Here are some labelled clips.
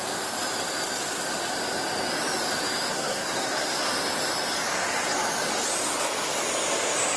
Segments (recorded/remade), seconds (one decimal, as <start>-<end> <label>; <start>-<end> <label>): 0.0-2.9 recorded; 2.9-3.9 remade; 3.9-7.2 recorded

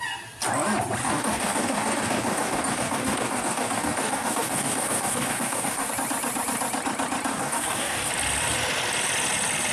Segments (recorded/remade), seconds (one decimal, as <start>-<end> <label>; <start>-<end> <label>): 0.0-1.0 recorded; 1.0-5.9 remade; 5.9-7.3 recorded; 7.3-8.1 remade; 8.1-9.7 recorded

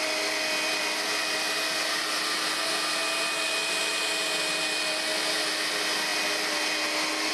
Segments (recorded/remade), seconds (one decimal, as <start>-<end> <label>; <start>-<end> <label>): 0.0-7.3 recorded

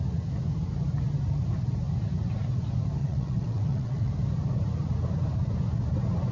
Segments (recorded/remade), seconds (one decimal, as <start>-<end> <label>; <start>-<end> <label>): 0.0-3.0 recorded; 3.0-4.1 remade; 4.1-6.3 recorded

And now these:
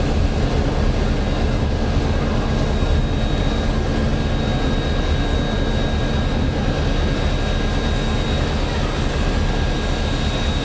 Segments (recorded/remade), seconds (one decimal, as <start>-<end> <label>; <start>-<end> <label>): 0.0-10.6 recorded

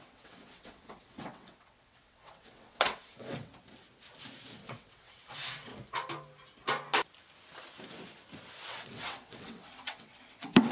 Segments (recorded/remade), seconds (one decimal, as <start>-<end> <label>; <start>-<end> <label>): 0.0-3.5 remade; 3.5-4.6 recorded; 4.6-5.7 remade; 5.7-8.7 recorded; 8.7-10.7 remade

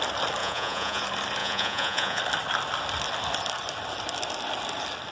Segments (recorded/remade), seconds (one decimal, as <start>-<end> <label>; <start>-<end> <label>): 0.0-0.4 recorded; 0.4-1.0 remade; 1.0-1.4 recorded; 1.4-2.2 remade; 2.2-5.1 recorded